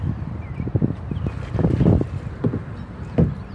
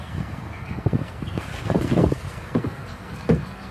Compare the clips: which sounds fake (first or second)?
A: second